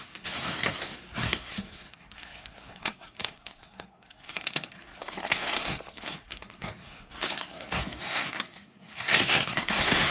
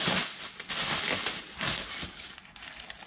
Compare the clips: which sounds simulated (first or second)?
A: first